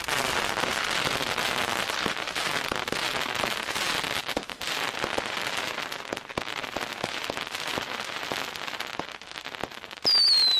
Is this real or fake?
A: real